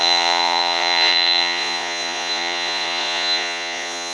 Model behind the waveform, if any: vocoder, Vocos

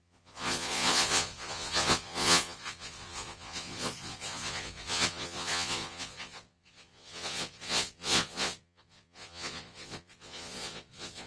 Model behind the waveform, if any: vocoder, Vocos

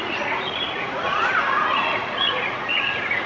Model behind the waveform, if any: vocoder, Vocos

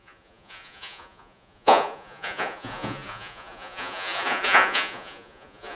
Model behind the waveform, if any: vocoder, Vocos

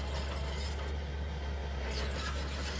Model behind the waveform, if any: none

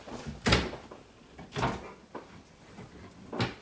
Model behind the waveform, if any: none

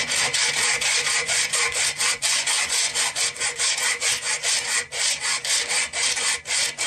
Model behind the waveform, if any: vocoder, Vocos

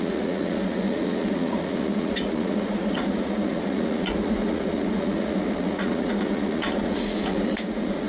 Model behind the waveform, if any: vocoder, Vocos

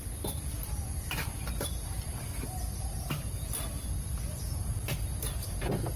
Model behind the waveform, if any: none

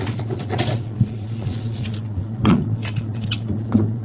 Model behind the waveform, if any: vocoder, Vocos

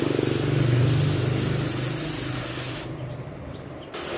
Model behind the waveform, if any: none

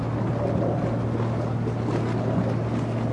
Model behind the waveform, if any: none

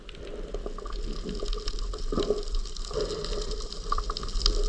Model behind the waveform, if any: none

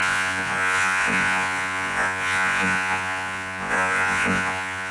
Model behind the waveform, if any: vocoder, Vocos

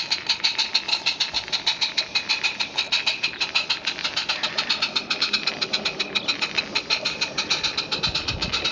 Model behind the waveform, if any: none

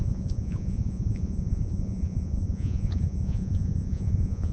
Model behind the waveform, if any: vocoder, Vocos